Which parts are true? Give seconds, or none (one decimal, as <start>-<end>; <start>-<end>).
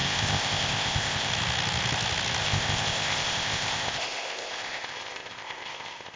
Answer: 1.3-2.4